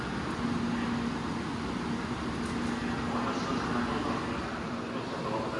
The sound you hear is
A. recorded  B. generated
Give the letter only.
A